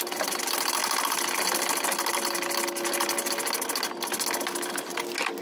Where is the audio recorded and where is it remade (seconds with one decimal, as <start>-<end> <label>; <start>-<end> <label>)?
0.0-5.4 recorded